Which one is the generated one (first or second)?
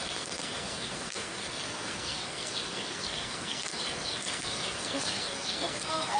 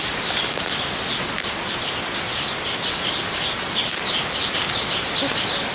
first